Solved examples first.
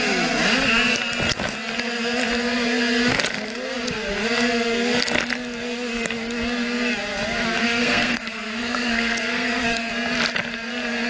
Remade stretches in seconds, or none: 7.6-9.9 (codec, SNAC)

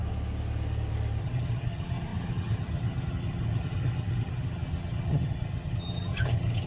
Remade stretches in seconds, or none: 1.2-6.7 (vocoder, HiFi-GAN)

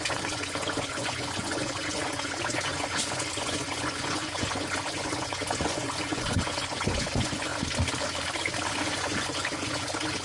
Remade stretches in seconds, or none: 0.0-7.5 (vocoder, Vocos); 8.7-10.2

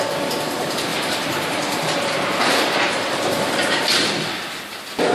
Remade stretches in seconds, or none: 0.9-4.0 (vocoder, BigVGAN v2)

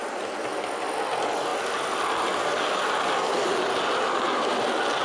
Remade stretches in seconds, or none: none